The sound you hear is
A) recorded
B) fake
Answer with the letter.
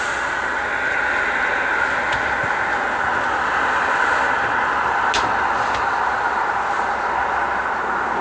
A